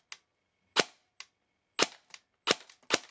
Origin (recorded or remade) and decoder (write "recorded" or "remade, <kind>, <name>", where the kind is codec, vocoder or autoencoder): recorded